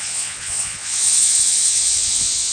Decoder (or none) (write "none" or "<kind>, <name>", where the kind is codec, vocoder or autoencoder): vocoder, Vocos